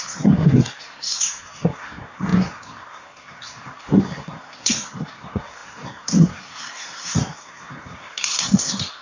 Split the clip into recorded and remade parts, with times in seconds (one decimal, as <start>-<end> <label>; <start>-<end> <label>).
0.0-9.0 remade